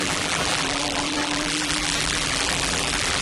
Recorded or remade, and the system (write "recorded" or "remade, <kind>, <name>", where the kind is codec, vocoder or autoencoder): remade, vocoder, BigVGAN v2